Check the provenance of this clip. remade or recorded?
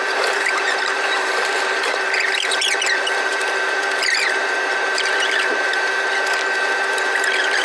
remade